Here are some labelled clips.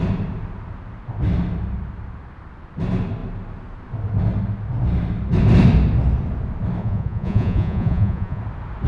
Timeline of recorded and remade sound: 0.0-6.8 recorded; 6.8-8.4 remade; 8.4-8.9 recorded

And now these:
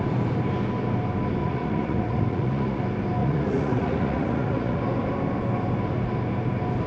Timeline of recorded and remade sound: 0.0-1.4 recorded; 1.4-2.8 remade; 2.8-3.2 recorded; 3.2-4.8 remade; 4.8-6.9 recorded

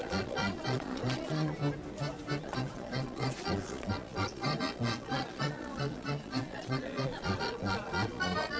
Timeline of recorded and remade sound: 0.0-1.6 remade; 1.6-2.4 recorded; 2.4-8.6 remade

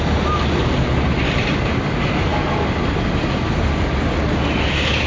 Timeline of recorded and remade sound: 0.0-5.1 recorded

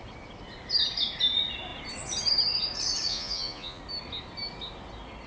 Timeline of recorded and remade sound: 0.0-3.1 recorded; 3.1-3.8 remade; 3.8-5.3 recorded